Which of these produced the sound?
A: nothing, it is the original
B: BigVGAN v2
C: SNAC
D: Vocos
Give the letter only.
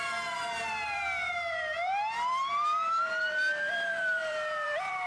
B